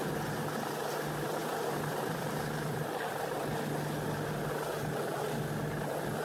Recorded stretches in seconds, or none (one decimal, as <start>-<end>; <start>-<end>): 0.0-1.4; 2.3-6.2